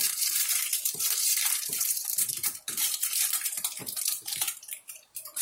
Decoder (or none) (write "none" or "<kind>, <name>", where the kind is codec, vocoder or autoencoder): vocoder, BigVGAN v2